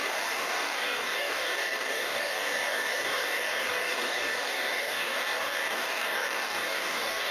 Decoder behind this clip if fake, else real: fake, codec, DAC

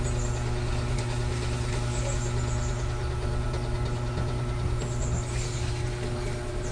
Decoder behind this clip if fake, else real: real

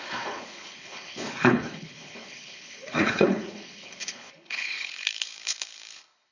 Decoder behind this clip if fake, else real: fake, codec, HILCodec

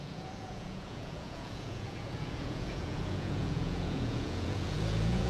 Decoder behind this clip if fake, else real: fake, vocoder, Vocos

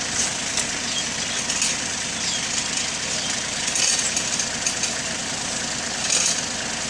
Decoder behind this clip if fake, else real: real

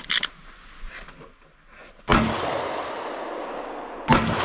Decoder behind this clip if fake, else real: real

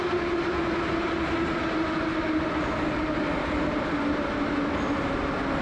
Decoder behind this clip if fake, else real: real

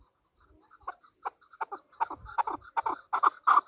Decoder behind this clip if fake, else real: real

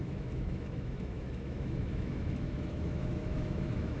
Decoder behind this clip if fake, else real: fake, autoencoder, DAC-VAE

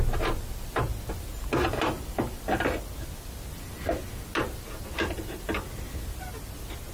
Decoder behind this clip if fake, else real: real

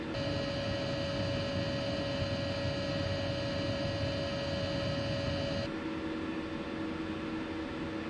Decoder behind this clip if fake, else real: real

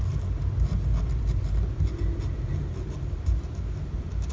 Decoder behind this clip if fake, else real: real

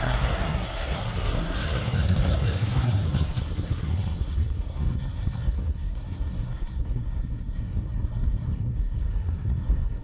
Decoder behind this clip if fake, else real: fake, codec, SNAC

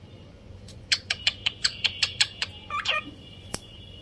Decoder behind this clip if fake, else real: fake, vocoder, Vocos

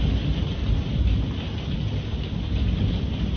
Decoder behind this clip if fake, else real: real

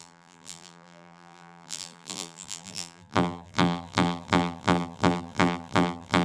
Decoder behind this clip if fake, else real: fake, vocoder, BigVGAN v2